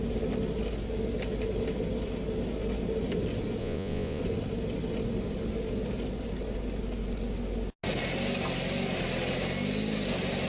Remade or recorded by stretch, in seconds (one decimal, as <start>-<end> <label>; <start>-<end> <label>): 0.0-3.6 recorded; 3.6-4.2 remade; 4.2-10.5 recorded